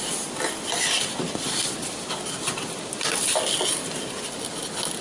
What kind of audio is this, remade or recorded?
recorded